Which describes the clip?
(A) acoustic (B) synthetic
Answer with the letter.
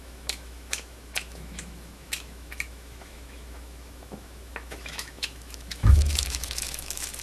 B